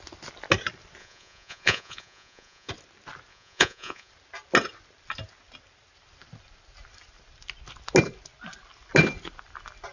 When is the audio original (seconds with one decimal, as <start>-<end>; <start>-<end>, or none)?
0.0-1.0; 2.7-3.3; 4.1-9.9

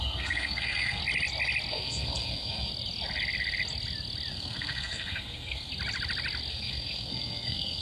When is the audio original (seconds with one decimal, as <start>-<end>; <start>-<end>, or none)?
1.0-1.7; 2.7-4.3; 5.7-6.5

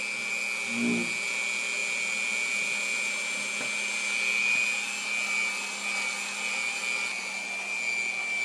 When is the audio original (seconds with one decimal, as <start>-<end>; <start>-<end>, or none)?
0.0-8.4

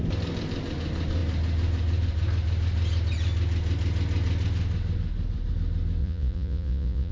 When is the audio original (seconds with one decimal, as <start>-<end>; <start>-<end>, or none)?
0.0-6.0

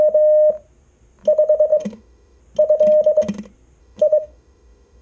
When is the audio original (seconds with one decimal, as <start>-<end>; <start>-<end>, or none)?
0.0-1.7; 2.4-3.8

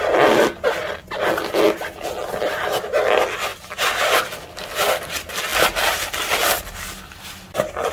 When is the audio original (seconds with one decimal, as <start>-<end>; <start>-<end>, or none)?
0.0-7.9

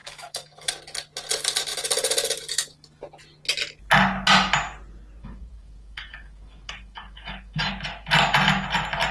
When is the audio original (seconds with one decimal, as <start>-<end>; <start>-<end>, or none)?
0.7-5.2; 7.7-9.1

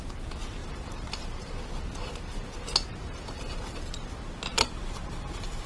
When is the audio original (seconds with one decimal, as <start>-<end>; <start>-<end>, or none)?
0.0-0.6; 1.5-2.9; 3.7-4.5